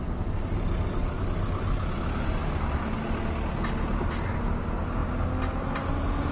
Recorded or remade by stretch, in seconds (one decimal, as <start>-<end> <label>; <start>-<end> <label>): 0.0-6.3 recorded